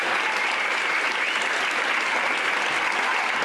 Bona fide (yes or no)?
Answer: yes